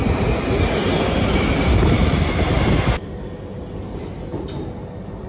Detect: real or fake real